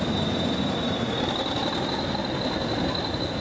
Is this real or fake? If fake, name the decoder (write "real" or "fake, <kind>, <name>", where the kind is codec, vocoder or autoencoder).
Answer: real